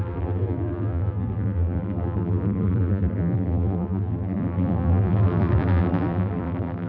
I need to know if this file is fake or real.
fake